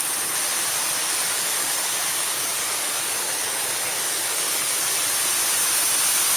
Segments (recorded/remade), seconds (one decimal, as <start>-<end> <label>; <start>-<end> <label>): 0.0-1.0 recorded; 1.0-4.8 remade; 4.8-6.4 recorded